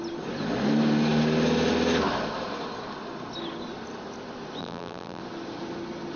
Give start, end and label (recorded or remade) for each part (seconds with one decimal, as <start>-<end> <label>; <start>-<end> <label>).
0.0-4.6 recorded; 4.6-5.2 remade; 5.2-6.2 recorded